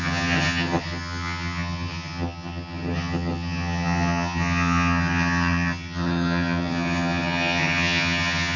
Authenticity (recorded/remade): remade